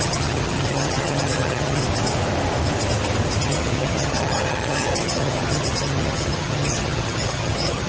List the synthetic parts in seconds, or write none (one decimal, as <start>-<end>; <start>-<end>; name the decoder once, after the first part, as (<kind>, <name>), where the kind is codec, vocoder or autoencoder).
0.0-1.8 (vocoder, HiFi-GAN); 3.4-7.9